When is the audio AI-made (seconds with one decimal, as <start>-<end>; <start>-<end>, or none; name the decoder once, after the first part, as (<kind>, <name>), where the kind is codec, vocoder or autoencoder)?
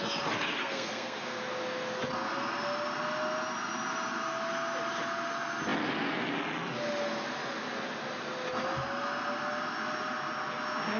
0.6-1.4 (codec, SNAC)